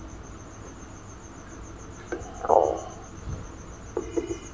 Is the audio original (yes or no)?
yes